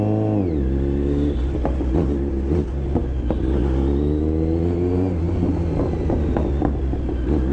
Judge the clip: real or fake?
real